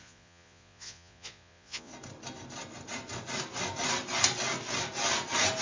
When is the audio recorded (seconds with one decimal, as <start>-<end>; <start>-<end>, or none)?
1.9-5.6